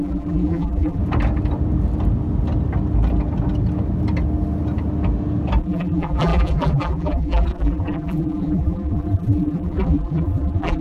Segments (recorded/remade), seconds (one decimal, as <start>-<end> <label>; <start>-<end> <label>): 0.0-1.0 remade; 1.0-5.6 recorded; 5.6-10.8 remade